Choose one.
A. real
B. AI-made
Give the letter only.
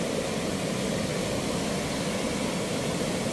A